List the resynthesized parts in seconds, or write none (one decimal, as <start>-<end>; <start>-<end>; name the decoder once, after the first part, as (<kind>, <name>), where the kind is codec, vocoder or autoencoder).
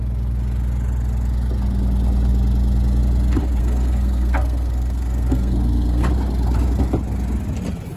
3.6-6.1 (codec, SNAC)